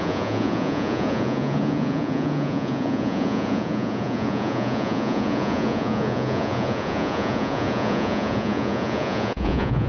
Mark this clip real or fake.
fake